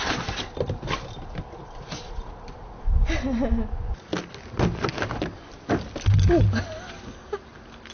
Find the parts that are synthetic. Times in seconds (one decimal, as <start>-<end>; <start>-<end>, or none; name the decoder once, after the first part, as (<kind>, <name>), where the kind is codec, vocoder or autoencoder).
none